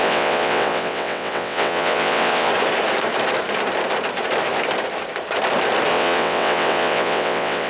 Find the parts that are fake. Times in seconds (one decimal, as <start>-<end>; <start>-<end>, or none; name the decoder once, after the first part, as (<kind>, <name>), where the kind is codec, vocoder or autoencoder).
0.0-2.5 (vocoder, WaveNeXt); 5.9-7.7